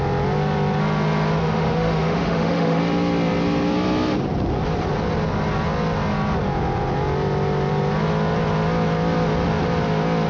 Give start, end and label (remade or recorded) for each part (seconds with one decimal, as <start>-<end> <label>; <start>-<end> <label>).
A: 0.0-1.4 recorded; 1.4-2.8 remade; 2.8-10.3 recorded